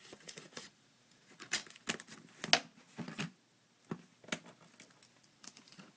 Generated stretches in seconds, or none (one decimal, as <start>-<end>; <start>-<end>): 0.0-1.6; 5.2-6.0